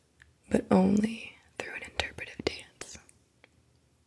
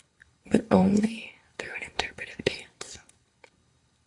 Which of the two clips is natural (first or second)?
first